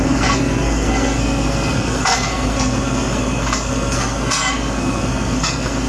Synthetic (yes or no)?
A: yes